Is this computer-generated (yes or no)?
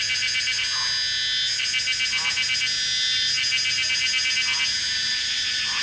no